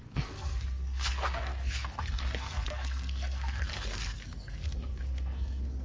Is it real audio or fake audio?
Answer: fake